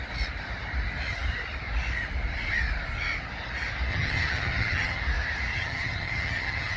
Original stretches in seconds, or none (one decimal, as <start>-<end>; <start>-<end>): 0.0-3.9; 5.0-5.5